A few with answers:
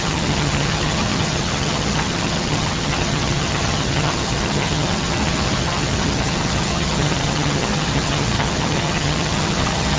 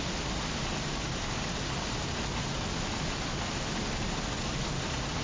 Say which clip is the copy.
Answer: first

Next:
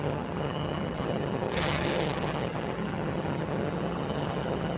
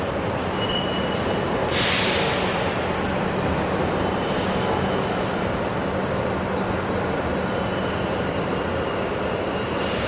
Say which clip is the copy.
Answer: first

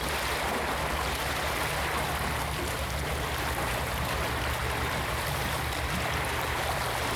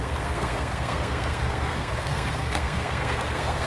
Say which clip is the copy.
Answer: second